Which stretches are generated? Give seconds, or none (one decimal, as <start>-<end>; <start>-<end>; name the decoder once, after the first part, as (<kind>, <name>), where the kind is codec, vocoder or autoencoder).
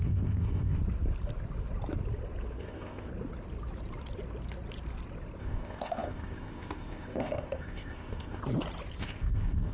0.0-0.8 (codec, ZipCodec); 2.6-3.1; 5.4-8.4; 9.0-9.7